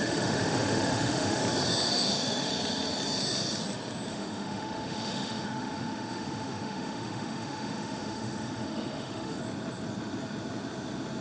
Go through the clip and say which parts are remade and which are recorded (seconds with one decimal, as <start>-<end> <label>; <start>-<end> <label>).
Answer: 0.0-1.4 remade; 1.4-1.9 recorded; 1.9-2.5 remade; 2.5-4.1 recorded; 4.1-9.4 remade; 9.4-11.2 recorded